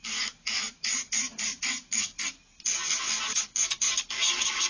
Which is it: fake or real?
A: real